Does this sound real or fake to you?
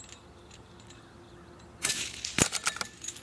real